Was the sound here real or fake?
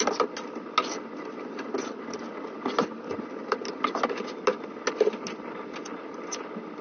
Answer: real